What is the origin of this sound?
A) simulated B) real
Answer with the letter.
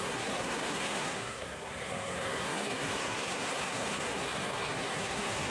A